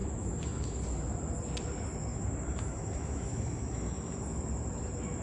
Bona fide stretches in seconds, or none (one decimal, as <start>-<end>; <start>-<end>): 0.8-2.1; 4.1-5.2